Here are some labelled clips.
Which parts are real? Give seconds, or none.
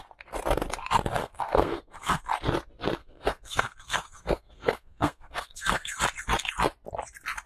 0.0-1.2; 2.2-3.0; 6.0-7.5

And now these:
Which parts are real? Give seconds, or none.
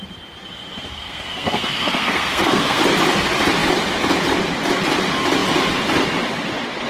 0.0-0.9; 2.8-6.9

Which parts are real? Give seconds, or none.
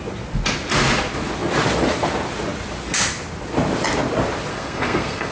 0.0-4.5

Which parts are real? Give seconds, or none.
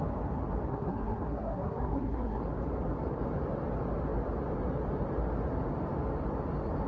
0.0-0.7; 2.4-6.9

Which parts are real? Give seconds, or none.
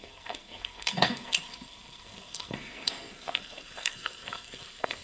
none